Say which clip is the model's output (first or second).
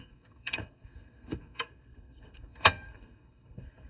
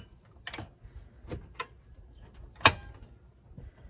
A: first